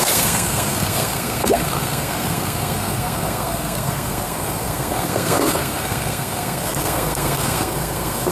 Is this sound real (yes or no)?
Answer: no